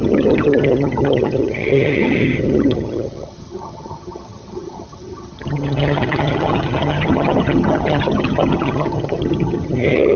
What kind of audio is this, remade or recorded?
remade